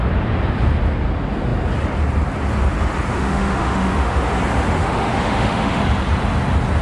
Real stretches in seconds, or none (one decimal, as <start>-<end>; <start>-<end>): 0.0-3.1; 4.3-4.8; 5.8-6.8